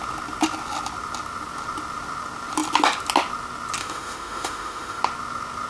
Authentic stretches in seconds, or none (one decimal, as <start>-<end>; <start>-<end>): 0.0-3.8; 5.0-5.7